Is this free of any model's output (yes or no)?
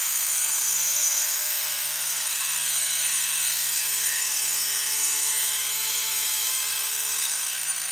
no